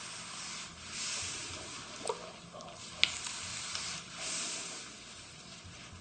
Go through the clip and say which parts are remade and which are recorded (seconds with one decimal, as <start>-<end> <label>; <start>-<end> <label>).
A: 0.0-3.5 recorded; 3.5-5.6 remade; 5.6-6.0 recorded